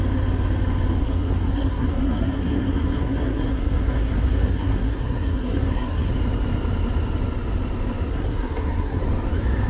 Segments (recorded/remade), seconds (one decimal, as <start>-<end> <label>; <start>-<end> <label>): 0.0-1.0 recorded; 1.0-6.1 remade; 6.1-8.1 recorded; 8.1-9.0 remade; 9.0-9.7 recorded